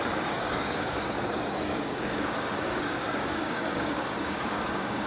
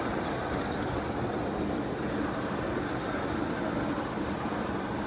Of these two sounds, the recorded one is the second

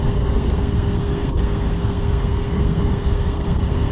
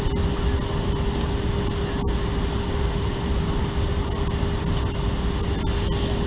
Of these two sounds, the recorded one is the second